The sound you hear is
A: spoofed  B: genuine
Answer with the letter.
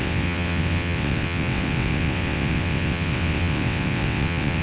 A